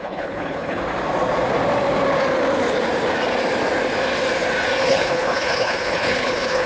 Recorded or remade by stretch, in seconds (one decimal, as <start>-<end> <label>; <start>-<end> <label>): 0.0-0.8 remade; 0.8-4.8 recorded; 4.8-6.7 remade